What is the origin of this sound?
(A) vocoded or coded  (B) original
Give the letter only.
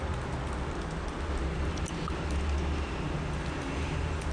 B